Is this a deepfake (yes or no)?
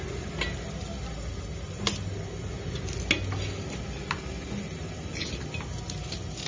no